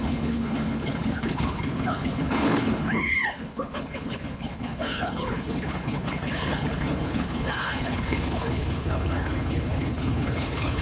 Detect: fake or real fake